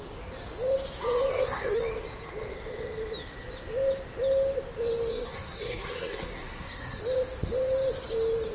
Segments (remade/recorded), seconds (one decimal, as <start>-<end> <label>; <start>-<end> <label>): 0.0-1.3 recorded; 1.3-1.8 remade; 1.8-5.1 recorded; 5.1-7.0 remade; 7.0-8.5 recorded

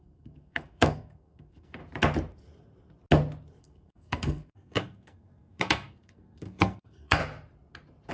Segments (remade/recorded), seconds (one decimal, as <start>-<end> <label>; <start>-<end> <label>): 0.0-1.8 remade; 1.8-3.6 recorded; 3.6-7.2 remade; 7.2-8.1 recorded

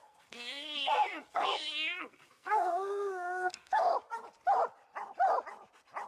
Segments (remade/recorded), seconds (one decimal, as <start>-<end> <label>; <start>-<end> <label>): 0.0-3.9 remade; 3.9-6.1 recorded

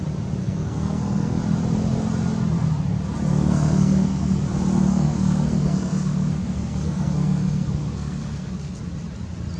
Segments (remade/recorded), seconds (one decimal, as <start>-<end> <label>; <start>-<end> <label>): 0.0-0.4 recorded; 0.4-1.4 remade; 1.4-3.3 recorded; 3.3-4.4 remade; 4.4-4.9 recorded; 4.9-8.8 remade; 8.8-9.6 recorded

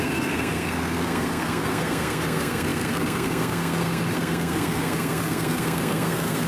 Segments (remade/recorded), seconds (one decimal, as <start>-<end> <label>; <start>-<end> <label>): 0.0-6.5 remade

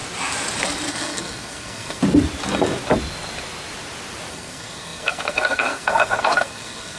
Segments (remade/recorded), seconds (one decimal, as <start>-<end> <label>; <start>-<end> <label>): 0.0-0.9 recorded; 0.9-2.0 remade; 2.0-4.3 recorded; 4.3-7.0 remade

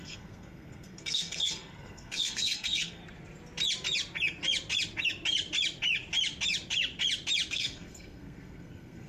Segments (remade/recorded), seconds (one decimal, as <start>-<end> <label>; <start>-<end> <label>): 0.0-3.0 remade; 3.0-7.5 recorded; 7.5-9.1 remade

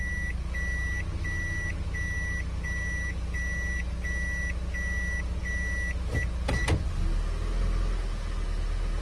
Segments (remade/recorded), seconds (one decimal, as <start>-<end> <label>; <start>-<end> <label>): 0.0-9.0 recorded